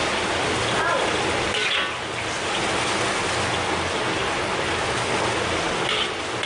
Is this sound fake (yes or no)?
no